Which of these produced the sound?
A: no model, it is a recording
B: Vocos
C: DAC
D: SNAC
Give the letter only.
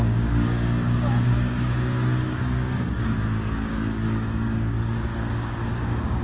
C